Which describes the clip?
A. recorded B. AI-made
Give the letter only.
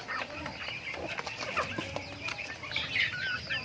A